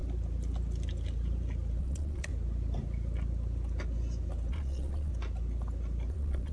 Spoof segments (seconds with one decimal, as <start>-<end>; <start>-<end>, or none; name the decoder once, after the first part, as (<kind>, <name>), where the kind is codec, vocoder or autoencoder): 1.8-2.3 (vocoder, Vocos); 4.5-5.1; 6.1-6.5